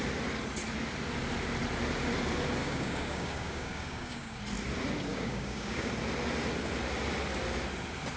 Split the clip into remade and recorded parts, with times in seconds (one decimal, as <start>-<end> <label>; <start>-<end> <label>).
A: 0.0-2.6 recorded; 2.6-4.4 remade; 4.4-5.1 recorded; 5.1-5.9 remade; 5.9-8.2 recorded